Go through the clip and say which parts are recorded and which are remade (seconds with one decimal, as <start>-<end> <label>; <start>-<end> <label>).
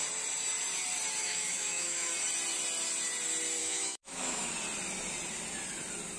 0.0-1.2 recorded; 1.2-2.1 remade; 2.1-3.6 recorded; 3.6-4.5 remade; 4.5-6.2 recorded